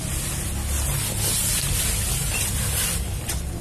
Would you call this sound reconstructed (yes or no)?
no